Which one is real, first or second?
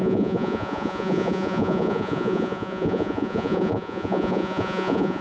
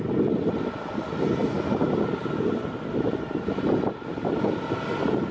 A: second